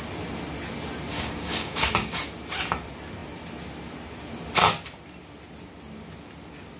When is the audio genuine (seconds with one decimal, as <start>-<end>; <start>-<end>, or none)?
0.0-1.1; 2.2-6.8